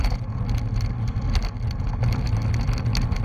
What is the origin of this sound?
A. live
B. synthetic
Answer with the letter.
A